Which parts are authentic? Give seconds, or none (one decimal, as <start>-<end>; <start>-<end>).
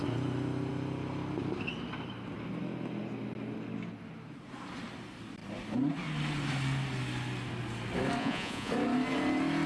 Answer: 0.0-8.2; 8.7-9.7